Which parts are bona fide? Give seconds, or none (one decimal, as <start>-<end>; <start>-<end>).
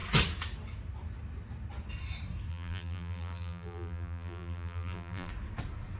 0.0-2.5; 5.3-6.0